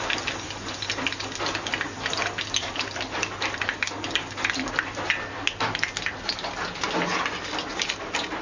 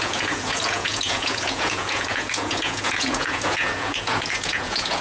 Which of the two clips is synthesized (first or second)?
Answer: second